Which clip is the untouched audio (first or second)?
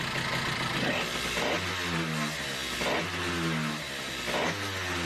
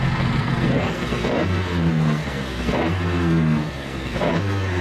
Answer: first